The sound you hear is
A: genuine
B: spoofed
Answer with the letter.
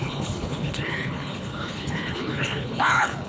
B